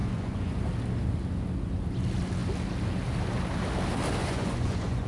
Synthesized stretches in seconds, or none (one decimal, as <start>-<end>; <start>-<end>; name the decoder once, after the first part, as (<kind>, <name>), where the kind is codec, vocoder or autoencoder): 0.0-0.6 (vocoder, Vocos); 4.2-5.1